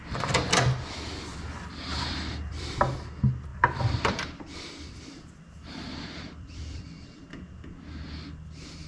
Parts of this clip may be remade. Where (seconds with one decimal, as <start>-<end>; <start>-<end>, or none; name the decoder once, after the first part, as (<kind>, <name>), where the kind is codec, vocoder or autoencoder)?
1.9-2.8 (vocoder, BigVGAN v2); 3.5-7.2